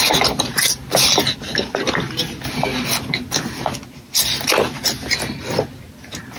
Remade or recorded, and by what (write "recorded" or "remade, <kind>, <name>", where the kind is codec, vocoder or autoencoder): recorded